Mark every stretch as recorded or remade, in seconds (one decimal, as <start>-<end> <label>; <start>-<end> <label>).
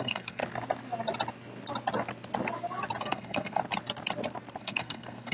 0.0-0.4 remade; 0.4-3.0 recorded; 3.0-3.6 remade; 3.6-4.6 recorded; 4.6-5.3 remade